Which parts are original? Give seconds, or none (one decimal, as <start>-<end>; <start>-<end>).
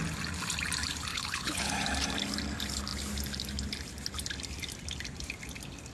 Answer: 0.0-1.1; 1.7-5.9